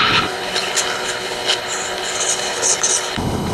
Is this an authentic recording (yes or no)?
no